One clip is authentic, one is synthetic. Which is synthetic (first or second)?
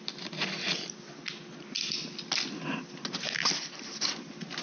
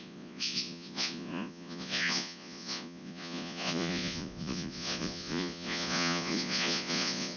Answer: second